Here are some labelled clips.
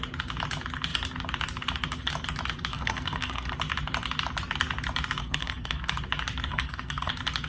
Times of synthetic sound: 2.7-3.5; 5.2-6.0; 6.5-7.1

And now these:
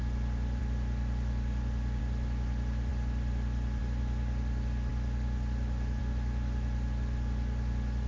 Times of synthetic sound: none